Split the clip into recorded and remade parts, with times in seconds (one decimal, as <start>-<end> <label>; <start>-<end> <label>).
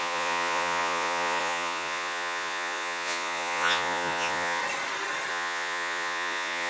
0.0-4.6 remade; 4.6-5.3 recorded; 5.3-6.7 remade